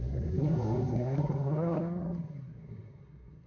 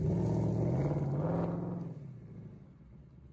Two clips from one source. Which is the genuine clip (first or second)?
second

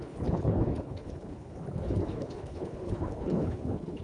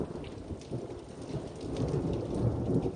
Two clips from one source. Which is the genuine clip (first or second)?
second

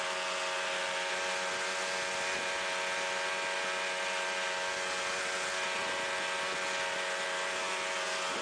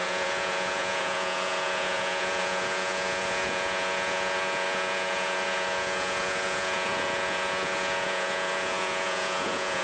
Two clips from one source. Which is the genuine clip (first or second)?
first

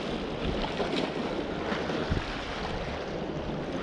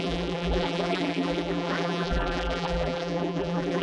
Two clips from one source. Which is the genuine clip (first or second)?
first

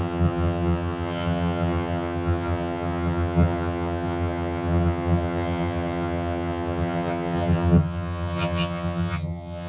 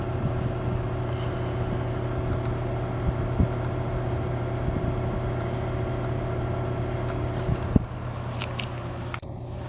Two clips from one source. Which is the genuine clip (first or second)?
second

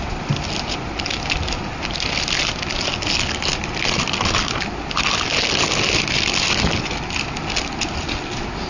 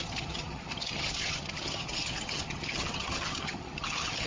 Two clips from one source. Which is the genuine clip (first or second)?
first